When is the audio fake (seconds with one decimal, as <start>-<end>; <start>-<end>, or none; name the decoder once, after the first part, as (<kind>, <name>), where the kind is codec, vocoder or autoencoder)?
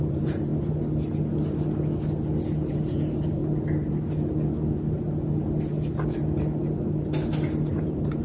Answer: 0.0-0.5 (vocoder, BigVGAN v2); 2.7-3.4; 7.7-8.2